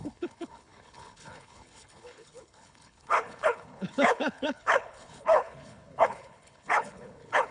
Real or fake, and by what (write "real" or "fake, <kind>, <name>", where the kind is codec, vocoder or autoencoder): fake, codec, HILCodec